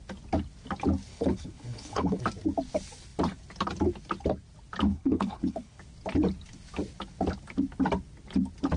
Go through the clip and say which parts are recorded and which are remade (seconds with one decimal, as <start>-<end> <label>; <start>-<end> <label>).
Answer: 0.0-1.1 recorded; 1.1-2.2 remade; 2.2-4.9 recorded; 4.9-5.8 remade; 5.8-8.8 recorded